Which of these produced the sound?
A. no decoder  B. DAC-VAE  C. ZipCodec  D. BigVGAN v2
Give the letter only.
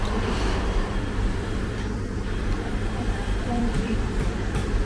D